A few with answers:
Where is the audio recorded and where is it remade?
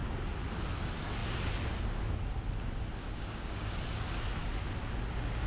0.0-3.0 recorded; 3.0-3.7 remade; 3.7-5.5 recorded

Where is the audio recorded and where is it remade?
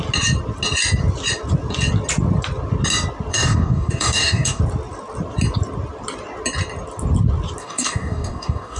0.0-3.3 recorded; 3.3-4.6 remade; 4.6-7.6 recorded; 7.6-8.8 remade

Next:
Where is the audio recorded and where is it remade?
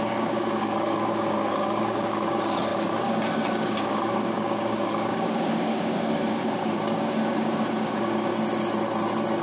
0.0-8.3 remade; 8.3-9.4 recorded